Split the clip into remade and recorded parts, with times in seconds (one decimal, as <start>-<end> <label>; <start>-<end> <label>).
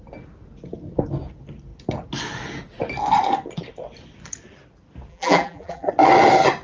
0.0-5.1 recorded; 5.1-5.9 remade; 5.9-6.6 recorded